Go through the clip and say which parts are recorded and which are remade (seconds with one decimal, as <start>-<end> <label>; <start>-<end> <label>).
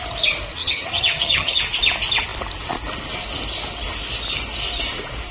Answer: 0.0-0.6 recorded; 0.6-1.6 remade; 1.6-5.3 recorded